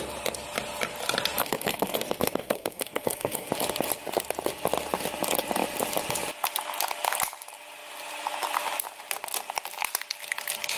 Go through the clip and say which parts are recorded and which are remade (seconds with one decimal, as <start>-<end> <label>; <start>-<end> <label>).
0.0-1.4 recorded; 1.4-3.5 remade; 3.5-10.8 recorded